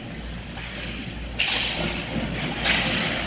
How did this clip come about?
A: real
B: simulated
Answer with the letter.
A